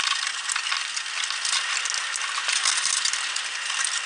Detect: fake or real real